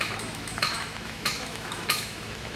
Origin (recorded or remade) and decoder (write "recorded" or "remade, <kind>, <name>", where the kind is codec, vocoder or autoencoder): remade, autoencoder, DAC-VAE